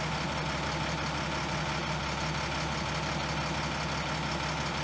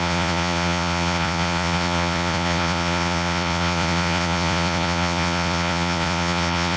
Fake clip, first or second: second